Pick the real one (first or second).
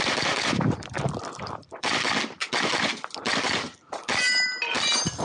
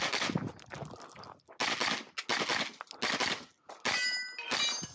second